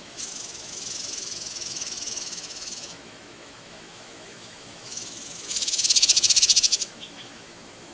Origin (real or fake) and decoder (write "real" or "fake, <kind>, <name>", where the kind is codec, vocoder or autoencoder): fake, autoencoder, DAC-VAE